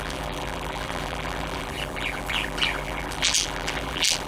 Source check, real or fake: fake